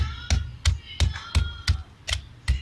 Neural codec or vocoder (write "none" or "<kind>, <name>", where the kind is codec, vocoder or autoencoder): none